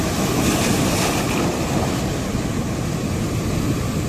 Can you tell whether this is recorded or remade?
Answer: recorded